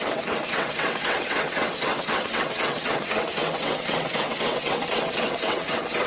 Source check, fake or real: fake